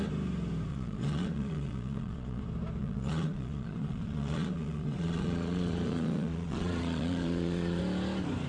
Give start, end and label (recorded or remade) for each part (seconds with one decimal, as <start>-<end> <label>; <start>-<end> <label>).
0.0-0.7 recorded; 0.7-2.4 remade; 2.4-2.8 recorded; 2.8-7.8 remade; 7.8-8.5 recorded